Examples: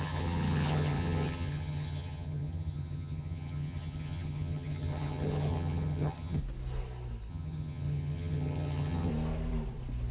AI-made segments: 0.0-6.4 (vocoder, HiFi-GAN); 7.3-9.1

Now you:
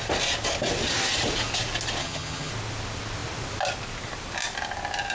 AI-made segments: 2.0-2.5 (vocoder, HiFi-GAN)

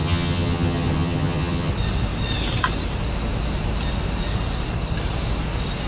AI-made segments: 0.0-1.7 (vocoder, HiFi-GAN)

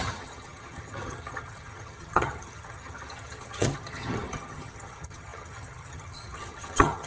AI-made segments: 0.0-7.1 (vocoder, HiFi-GAN)